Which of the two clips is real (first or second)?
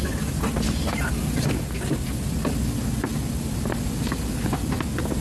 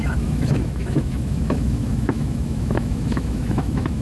first